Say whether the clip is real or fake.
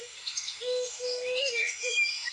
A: fake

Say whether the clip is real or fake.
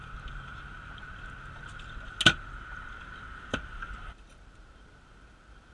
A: real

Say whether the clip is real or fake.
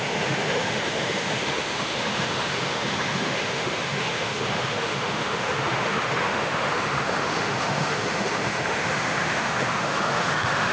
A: fake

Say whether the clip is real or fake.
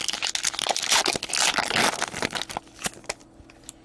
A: real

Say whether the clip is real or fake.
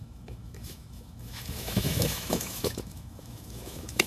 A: fake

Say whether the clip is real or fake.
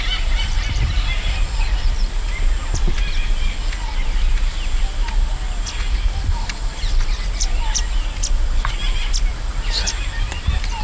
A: real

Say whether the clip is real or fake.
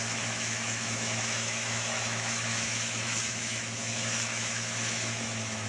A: fake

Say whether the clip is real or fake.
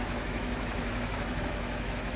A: fake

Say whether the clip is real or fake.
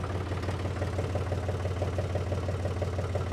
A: real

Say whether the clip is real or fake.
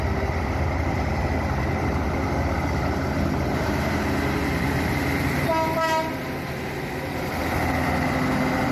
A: real